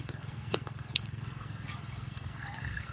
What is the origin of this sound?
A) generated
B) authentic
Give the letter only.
A